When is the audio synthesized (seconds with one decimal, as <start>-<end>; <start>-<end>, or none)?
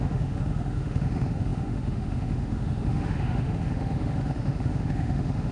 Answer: 0.0-5.5